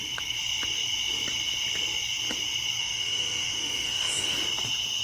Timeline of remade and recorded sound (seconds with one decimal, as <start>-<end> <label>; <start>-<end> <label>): 0.0-2.8 recorded; 2.8-4.4 remade; 4.4-5.0 recorded